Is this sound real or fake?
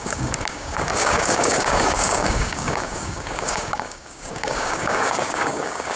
fake